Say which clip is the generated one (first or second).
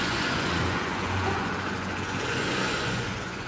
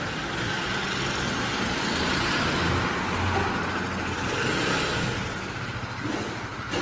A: first